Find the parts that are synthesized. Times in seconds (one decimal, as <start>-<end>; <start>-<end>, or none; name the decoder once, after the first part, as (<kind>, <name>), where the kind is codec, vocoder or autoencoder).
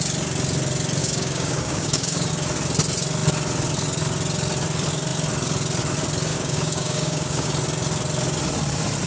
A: 1.0-2.3 (codec, DAC); 6.3-7.5